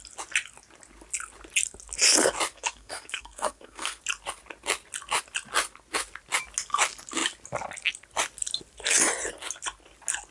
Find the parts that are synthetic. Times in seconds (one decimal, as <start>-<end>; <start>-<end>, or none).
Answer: 2.5-4.0